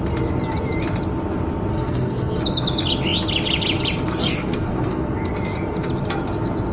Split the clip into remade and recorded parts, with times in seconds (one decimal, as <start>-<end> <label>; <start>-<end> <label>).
0.0-1.7 recorded; 1.7-2.4 remade; 2.4-4.2 recorded; 4.2-5.3 remade; 5.3-6.7 recorded